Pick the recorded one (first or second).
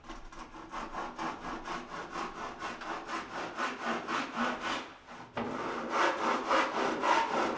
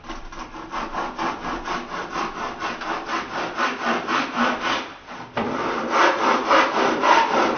first